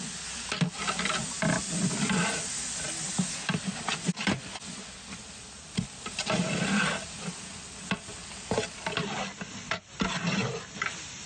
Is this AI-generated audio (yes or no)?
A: no